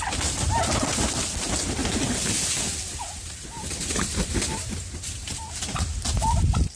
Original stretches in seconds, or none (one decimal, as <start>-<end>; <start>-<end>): 0.0-1.8; 5.9-6.8